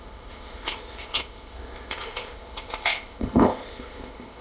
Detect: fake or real fake